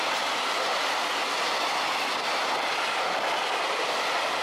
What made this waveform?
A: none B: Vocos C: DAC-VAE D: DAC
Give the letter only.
A